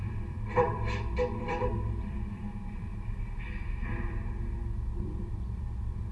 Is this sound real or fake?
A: fake